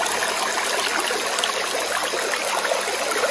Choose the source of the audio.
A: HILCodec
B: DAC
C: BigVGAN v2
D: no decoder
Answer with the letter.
D